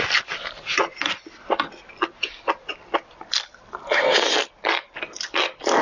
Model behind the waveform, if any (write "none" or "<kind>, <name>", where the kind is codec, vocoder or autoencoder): none